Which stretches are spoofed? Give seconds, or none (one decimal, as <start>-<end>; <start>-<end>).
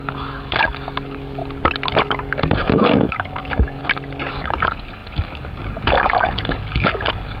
0.0-1.4; 2.0-3.8; 4.3-7.4